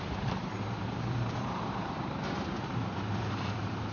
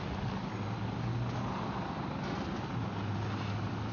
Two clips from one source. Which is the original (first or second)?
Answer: second